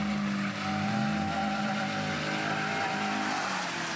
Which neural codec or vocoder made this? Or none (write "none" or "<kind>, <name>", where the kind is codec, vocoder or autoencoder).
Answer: none